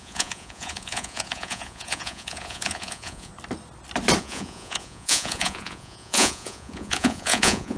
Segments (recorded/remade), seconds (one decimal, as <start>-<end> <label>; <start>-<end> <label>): 0.0-3.3 remade; 3.3-4.2 recorded; 4.2-7.8 remade